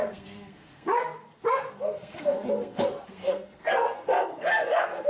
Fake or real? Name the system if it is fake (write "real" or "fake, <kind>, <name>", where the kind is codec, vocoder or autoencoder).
fake, codec, SNAC